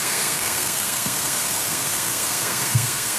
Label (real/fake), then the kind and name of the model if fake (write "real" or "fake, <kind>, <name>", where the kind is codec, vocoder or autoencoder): fake, codec, SNAC